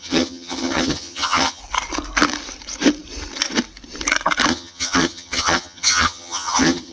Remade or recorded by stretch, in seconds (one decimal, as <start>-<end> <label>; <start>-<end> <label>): 0.0-1.6 remade; 1.6-4.5 recorded; 4.5-6.9 remade